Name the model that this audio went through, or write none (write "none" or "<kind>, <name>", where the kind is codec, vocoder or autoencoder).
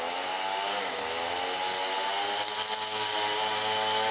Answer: none